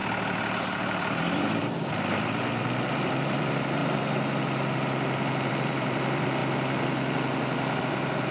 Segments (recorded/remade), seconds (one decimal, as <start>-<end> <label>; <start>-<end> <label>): 0.0-0.6 recorded; 0.6-3.8 remade; 3.8-5.5 recorded; 5.5-6.4 remade; 6.4-7.8 recorded; 7.8-8.3 remade